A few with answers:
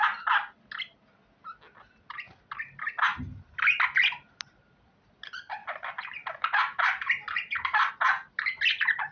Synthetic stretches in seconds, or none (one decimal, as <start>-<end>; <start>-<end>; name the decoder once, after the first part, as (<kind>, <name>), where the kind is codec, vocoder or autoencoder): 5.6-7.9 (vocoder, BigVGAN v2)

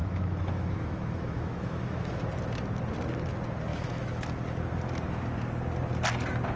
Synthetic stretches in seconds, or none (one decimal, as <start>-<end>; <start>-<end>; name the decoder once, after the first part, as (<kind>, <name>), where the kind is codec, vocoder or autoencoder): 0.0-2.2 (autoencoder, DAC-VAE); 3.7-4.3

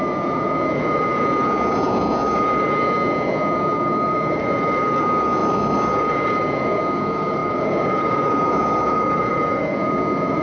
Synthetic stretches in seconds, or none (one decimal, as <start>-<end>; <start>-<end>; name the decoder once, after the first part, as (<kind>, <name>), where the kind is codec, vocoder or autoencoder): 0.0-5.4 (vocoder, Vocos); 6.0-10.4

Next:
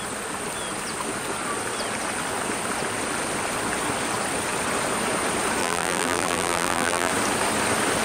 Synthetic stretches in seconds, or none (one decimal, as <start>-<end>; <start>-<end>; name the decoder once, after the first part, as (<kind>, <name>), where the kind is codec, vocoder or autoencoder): 5.6-7.1 (vocoder, BigVGAN v2)

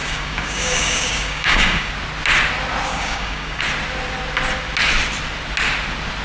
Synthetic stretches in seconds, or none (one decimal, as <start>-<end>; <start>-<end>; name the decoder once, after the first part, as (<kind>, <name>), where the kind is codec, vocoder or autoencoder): 0.0-1.9 (codec, DAC); 2.9-3.6

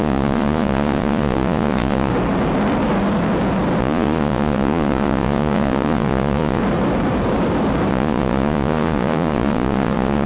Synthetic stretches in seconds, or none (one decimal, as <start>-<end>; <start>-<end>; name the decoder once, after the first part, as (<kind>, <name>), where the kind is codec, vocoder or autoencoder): 0.0-2.1 (vocoder, Vocos); 3.8-6.6; 7.9-10.3

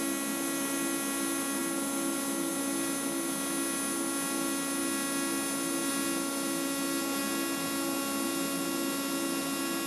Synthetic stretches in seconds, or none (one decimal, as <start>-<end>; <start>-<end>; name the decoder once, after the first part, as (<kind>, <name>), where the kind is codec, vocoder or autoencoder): none

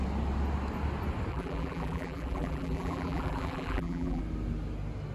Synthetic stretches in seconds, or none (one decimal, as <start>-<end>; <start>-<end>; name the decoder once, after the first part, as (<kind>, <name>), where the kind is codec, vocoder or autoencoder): 1.3-4.2 (vocoder, BigVGAN v2)